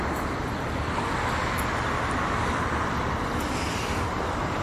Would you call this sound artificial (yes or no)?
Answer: no